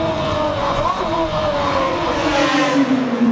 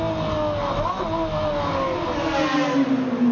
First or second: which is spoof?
first